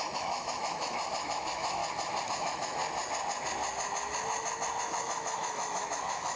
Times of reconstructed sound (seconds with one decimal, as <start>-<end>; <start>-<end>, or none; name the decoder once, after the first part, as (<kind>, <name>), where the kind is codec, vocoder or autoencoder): 0.0-1.8 (autoencoder, DAC-VAE); 2.3-2.8; 4.8-6.4